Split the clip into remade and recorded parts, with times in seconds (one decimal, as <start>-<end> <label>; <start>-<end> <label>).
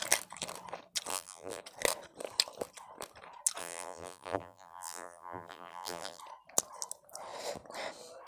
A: 0.0-1.1 recorded; 1.1-1.6 remade; 1.6-3.6 recorded; 3.6-6.2 remade; 6.2-8.3 recorded